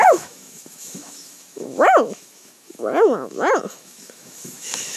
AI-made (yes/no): yes